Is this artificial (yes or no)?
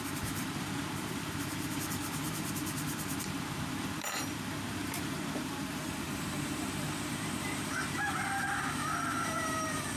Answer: yes